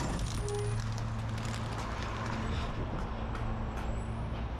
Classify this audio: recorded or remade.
recorded